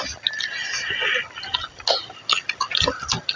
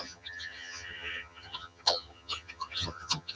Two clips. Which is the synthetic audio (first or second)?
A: second